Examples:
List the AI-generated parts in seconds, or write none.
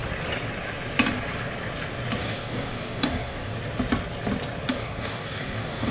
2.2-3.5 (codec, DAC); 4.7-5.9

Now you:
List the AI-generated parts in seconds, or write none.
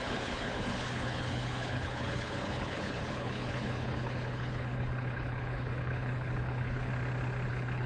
0.0-6.9 (codec, HILCodec); 7.5-7.9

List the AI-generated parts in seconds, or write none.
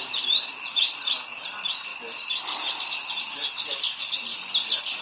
none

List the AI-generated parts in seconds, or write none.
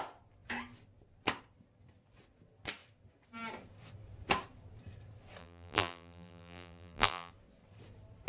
5.4-7.3 (vocoder, BigVGAN v2)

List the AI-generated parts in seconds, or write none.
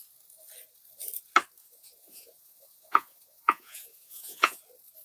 1.6-4.6 (vocoder, Vocos)